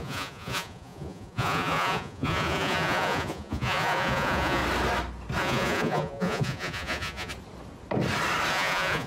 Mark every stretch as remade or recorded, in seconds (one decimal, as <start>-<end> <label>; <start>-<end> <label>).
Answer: 0.0-4.6 remade; 4.6-5.4 recorded; 5.4-7.3 remade; 7.3-8.5 recorded; 8.5-9.1 remade